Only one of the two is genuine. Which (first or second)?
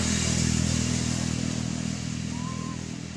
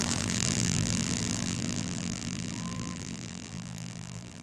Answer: first